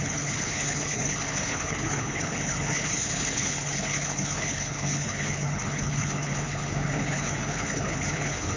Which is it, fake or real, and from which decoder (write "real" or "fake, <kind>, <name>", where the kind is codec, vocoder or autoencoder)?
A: fake, codec, HILCodec